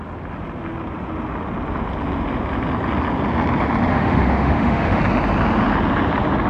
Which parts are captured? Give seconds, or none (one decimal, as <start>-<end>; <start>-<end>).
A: 0.0-3.9; 5.0-6.5